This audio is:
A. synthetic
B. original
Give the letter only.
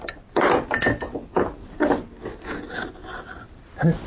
B